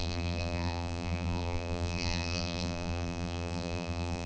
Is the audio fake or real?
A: fake